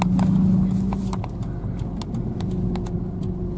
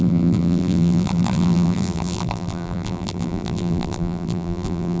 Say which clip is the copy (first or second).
second